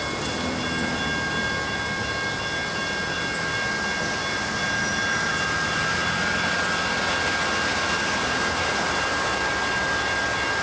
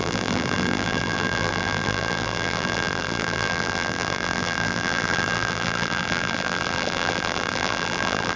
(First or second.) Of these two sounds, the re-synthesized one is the second